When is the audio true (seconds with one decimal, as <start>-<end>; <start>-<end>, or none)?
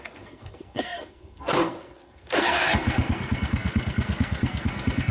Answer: none